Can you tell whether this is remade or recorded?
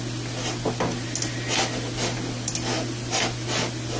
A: recorded